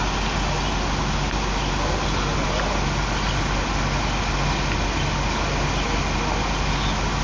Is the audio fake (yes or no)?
no